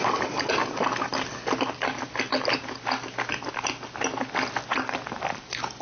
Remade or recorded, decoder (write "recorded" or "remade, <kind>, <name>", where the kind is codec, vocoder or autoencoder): recorded